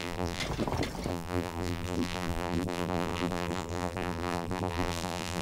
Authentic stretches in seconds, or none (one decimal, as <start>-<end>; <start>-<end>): 0.4-1.1